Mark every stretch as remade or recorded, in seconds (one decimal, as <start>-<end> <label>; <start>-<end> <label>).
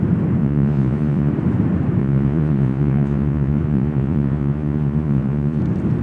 0.0-0.4 recorded; 0.4-1.3 remade; 1.3-2.0 recorded; 2.0-5.6 remade; 5.6-6.0 recorded